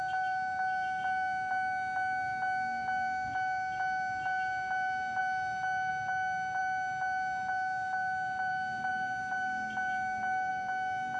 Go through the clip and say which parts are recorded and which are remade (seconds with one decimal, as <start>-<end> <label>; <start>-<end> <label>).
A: 0.0-11.2 recorded